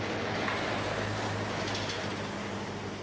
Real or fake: real